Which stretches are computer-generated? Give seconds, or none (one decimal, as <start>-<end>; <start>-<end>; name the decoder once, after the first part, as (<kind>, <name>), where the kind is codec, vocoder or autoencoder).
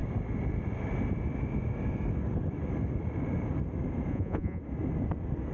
4.1-4.6 (vocoder, Vocos)